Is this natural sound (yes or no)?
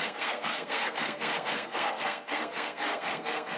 no